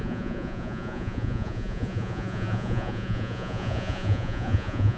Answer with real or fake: fake